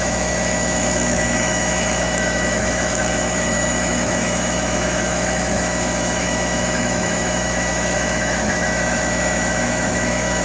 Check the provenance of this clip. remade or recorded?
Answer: remade